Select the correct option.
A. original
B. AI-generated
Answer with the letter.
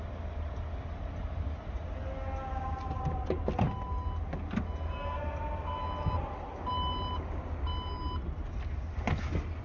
A